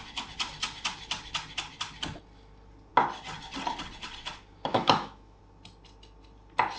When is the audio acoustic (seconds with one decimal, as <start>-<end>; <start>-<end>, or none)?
0.0-4.7; 5.4-6.8